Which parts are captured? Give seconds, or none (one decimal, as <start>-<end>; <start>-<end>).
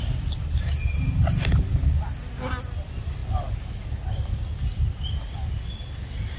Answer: 0.0-6.4